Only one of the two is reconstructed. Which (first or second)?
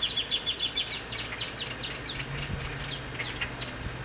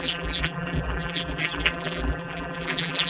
second